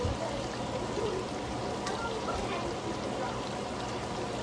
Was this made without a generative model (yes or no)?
yes